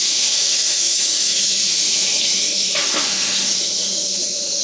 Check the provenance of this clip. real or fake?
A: fake